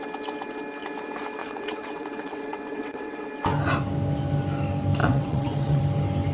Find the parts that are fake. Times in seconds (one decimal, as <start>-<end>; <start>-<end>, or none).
1.4-3.3; 5.0-5.8